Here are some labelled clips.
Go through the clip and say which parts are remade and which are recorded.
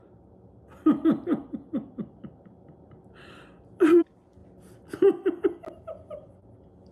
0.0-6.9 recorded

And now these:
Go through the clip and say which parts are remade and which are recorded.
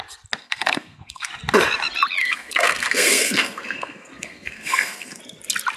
0.0-0.4 recorded; 0.4-1.3 remade; 1.3-2.2 recorded; 2.2-5.2 remade; 5.2-5.8 recorded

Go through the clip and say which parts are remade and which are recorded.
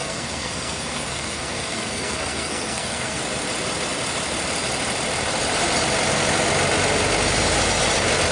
0.0-3.2 remade; 3.2-8.3 recorded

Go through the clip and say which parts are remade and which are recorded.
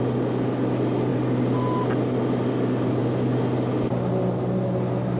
0.0-5.2 recorded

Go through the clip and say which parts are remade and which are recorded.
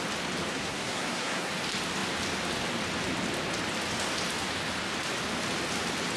0.0-0.5 recorded; 0.5-1.5 remade; 1.5-6.2 recorded